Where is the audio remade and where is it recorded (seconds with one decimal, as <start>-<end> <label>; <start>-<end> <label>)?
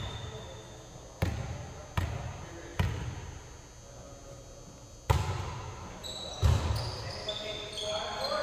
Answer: 0.0-8.4 recorded